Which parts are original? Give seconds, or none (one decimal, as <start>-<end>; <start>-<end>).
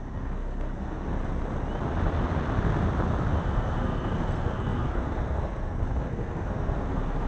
1.2-3.4